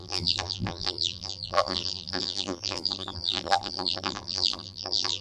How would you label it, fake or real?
fake